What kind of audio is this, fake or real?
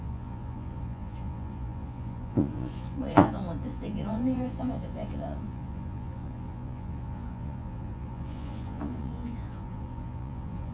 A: fake